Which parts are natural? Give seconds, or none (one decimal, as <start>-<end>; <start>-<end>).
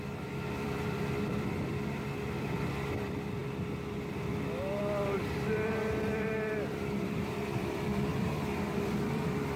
3.4-4.8